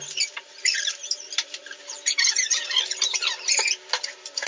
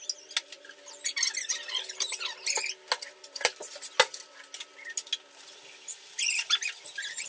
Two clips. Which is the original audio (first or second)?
second